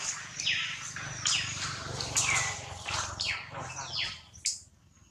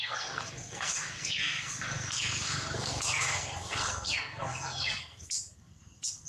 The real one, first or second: first